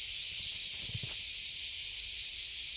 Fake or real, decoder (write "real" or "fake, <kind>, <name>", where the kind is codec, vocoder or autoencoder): real